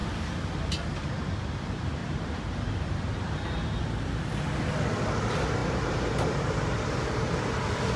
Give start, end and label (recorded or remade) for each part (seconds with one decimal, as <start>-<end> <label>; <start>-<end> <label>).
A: 0.0-2.0 recorded; 2.0-3.8 remade; 3.8-5.6 recorded; 5.6-7.2 remade; 7.2-8.0 recorded